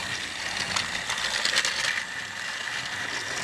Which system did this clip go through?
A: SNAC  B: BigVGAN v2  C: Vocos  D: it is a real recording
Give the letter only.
D